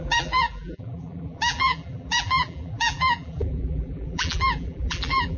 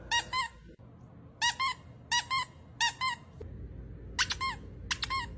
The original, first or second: second